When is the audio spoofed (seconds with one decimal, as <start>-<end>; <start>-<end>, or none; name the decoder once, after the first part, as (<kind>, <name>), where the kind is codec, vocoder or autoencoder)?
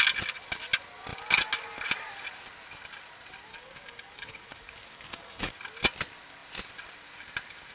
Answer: 3.5-5.5 (codec, DAC)